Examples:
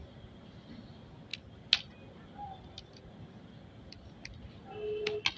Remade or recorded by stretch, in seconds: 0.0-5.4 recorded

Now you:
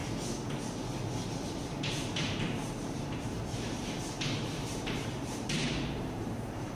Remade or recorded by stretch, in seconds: 0.0-1.5 recorded; 1.5-6.7 remade

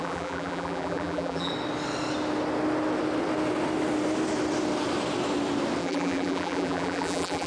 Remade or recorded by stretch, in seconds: 0.0-1.5 remade; 1.5-5.8 recorded; 5.8-7.5 remade

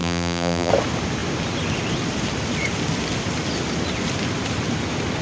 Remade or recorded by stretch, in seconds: 0.0-0.7 remade; 0.7-5.2 recorded

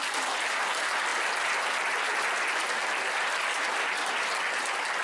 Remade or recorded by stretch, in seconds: 0.0-5.0 recorded